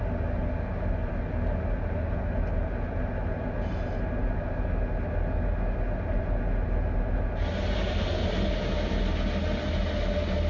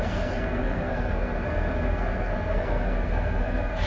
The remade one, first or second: second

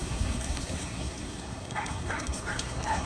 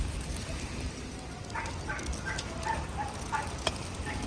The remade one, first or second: first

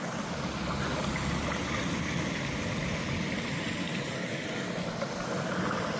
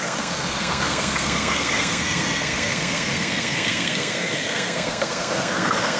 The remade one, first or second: second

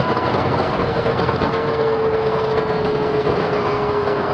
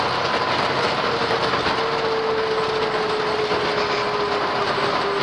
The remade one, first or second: first